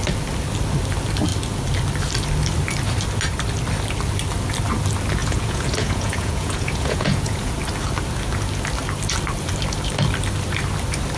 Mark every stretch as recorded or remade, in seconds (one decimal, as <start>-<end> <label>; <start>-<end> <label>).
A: 0.0-5.2 recorded; 5.2-7.5 remade; 7.5-11.2 recorded